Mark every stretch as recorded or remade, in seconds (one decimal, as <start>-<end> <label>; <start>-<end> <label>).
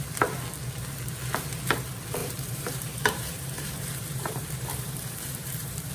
0.0-2.2 recorded; 2.2-5.9 remade